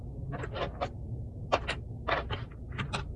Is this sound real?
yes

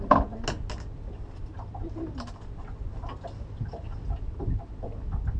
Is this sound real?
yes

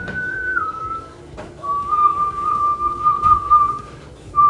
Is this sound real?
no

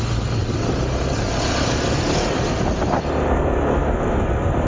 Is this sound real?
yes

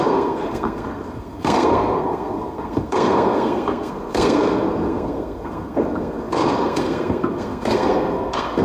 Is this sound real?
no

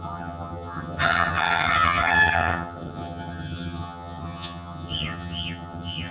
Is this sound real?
no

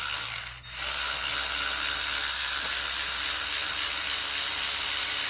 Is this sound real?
yes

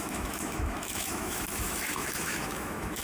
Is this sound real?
no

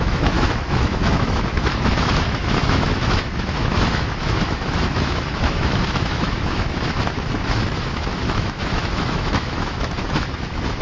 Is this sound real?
no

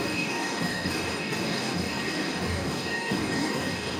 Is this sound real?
no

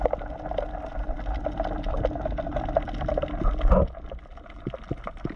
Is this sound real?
yes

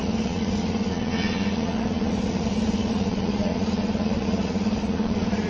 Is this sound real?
no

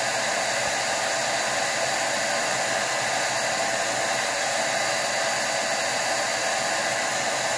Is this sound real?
yes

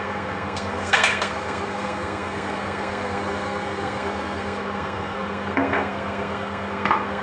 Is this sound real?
no